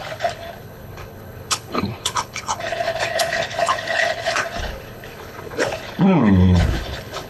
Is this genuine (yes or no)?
no